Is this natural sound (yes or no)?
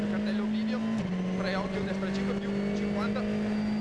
yes